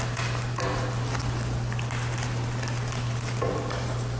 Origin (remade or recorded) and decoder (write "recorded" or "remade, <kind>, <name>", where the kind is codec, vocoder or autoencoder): recorded